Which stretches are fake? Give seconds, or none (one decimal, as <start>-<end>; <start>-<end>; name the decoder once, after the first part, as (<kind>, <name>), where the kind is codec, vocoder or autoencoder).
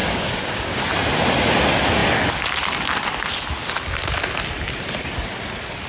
0.0-0.8 (codec, DAC)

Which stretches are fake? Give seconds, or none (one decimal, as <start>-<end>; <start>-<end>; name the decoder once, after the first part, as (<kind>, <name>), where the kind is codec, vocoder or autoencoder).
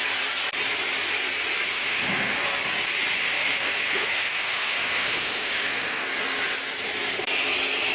1.7-2.4 (autoencoder, DAC-VAE); 3.2-6.0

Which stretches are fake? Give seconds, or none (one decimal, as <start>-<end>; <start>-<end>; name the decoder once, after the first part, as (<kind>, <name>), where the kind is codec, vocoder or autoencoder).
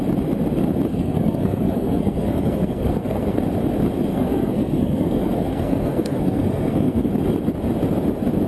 0.9-3.4 (codec, SNAC); 4.1-7.1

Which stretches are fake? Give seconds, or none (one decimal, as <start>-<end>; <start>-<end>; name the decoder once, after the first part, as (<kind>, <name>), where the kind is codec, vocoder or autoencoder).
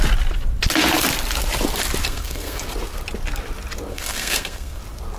2.0-2.6 (codec, SNAC); 3.9-4.8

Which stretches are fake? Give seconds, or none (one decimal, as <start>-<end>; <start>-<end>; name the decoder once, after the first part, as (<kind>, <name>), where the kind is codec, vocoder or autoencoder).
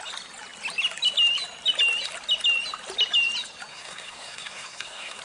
3.7-5.2 (codec, SNAC)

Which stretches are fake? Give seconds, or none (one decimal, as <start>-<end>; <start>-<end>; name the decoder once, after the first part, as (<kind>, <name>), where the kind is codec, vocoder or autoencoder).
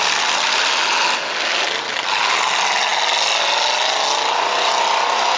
none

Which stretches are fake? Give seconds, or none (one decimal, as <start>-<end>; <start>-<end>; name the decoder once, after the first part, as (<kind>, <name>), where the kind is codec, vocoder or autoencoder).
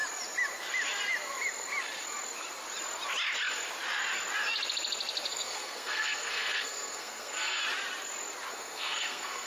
5.3-7.6 (codec, SNAC); 8.5-9.5